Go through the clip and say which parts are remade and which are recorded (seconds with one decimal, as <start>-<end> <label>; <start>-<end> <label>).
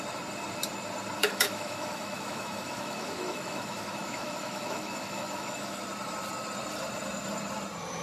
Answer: 0.0-1.2 recorded; 1.2-5.8 remade; 5.8-8.0 recorded